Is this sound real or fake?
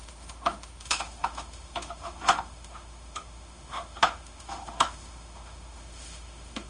fake